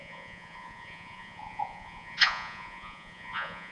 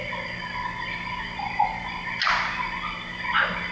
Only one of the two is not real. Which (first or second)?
first